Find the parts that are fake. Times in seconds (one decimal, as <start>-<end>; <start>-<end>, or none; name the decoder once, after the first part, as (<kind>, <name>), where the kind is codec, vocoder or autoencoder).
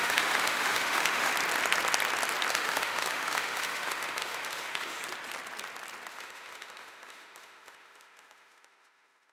0.0-1.3 (autoencoder, DAC-VAE); 2.5-5.0; 6.1-9.3